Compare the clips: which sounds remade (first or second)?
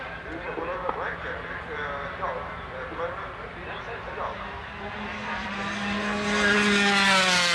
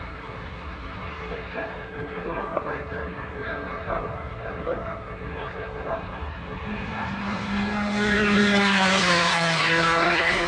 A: second